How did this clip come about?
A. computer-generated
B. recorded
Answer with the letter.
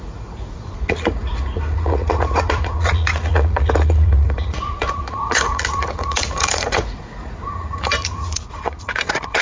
A